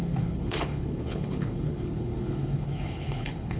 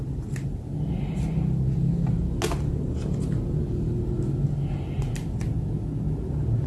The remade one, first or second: first